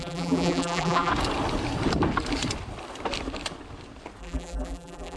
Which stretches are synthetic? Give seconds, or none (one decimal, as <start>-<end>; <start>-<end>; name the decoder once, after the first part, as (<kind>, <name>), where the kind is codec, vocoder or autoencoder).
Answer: 0.0-1.1 (vocoder, BigVGAN v2); 4.2-5.2